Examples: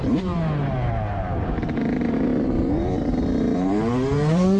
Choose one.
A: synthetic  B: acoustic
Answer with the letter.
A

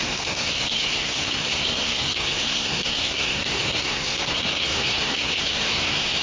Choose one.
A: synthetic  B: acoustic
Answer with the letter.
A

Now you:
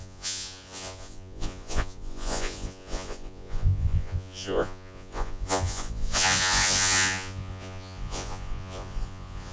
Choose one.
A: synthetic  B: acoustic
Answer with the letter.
A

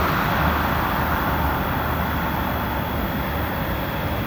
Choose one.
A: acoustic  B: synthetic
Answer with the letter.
A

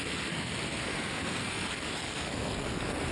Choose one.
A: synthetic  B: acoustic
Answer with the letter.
A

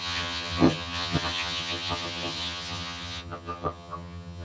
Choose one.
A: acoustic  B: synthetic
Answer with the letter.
B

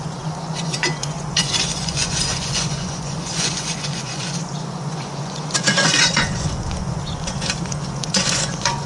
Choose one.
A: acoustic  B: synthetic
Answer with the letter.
B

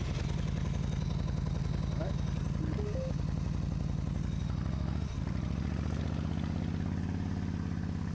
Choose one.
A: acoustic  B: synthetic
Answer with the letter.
A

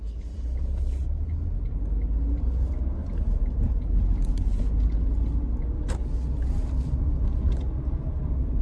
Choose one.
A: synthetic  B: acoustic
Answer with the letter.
B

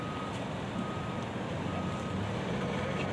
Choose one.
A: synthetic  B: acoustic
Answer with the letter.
B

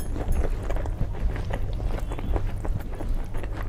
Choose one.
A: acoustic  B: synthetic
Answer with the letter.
A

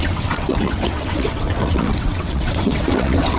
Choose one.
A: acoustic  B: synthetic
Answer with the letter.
B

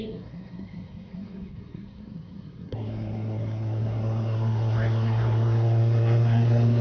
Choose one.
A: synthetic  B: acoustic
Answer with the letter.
A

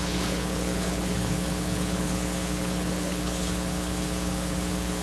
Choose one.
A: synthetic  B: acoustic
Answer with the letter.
A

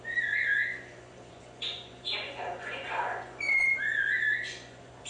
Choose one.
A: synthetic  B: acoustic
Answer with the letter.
A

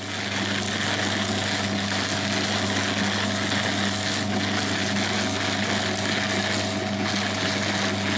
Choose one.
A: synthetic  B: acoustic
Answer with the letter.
B